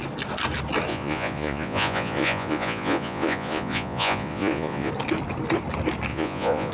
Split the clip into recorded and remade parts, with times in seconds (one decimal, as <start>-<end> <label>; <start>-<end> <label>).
0.0-0.9 recorded; 0.9-4.9 remade; 4.9-6.1 recorded; 6.1-6.7 remade